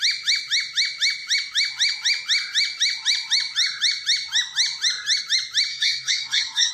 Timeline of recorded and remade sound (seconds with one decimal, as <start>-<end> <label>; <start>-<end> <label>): 0.0-5.7 recorded; 5.7-6.7 remade